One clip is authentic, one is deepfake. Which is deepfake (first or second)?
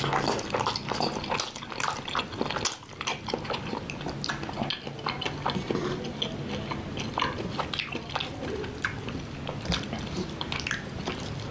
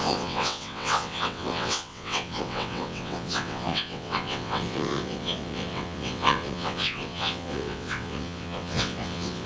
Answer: second